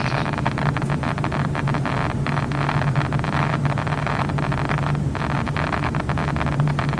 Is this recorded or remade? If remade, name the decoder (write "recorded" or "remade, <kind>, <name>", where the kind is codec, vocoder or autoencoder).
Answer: recorded